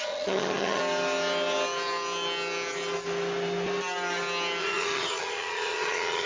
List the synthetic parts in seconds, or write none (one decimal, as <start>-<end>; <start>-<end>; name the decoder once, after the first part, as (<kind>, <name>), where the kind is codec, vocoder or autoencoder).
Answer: 0.0-0.8 (vocoder, HiFi-GAN); 4.6-6.3